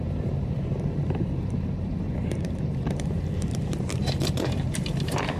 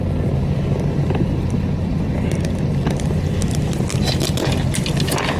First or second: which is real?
second